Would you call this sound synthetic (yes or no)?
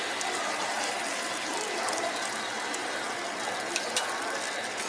no